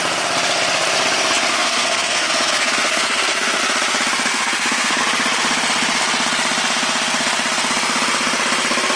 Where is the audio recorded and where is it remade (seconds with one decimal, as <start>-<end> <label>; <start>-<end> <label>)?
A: 0.0-1.5 recorded; 1.5-3.6 remade; 3.6-4.3 recorded; 4.3-5.0 remade; 5.0-9.0 recorded